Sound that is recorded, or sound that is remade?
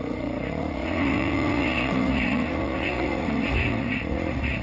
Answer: remade